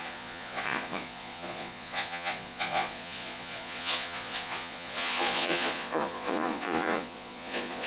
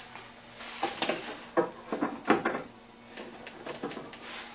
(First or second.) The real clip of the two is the second